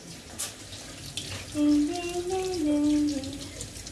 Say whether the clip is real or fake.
real